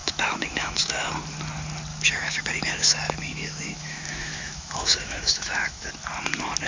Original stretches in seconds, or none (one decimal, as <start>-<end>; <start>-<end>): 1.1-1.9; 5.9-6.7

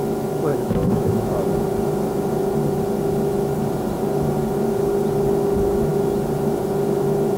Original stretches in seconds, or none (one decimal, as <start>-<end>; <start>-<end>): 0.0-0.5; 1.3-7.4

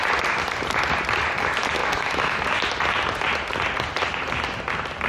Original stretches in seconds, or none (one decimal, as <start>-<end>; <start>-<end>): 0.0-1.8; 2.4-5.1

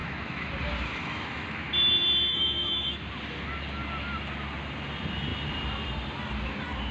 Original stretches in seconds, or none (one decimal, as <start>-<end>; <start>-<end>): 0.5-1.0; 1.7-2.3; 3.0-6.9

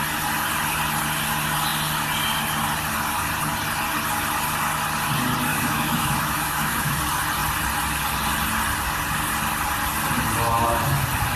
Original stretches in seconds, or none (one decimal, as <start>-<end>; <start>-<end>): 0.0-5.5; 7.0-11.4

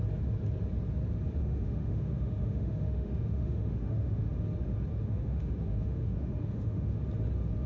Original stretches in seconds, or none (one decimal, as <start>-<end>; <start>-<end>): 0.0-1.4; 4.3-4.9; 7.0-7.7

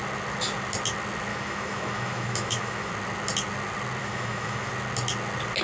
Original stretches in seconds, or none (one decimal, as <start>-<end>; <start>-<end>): 0.0-1.3; 2.9-4.0; 4.7-5.6